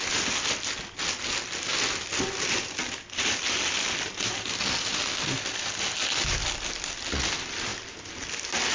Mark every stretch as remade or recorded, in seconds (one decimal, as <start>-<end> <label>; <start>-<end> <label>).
0.0-8.7 recorded